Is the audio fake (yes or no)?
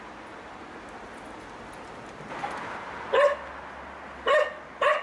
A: no